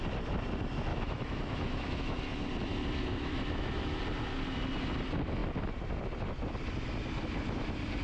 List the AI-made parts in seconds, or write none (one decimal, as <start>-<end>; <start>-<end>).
0.9-2.2; 3.1-4.0

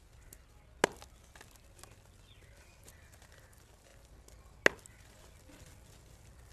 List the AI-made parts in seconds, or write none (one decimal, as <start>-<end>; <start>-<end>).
none

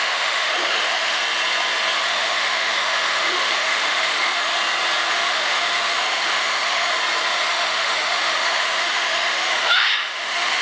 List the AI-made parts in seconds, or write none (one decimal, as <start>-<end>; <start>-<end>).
0.0-1.2; 2.0-4.5; 5.1-6.9; 7.5-10.6

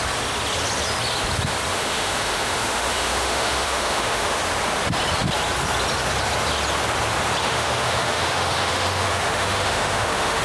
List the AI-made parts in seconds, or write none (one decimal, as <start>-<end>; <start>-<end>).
1.7-4.4; 7.4-10.4

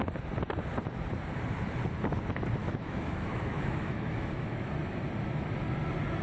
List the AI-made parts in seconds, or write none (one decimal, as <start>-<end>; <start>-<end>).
2.6-4.7

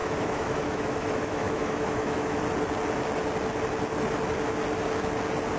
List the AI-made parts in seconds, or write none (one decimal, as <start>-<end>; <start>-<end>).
0.0-2.4

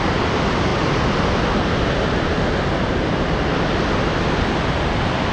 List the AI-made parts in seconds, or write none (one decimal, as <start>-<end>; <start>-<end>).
none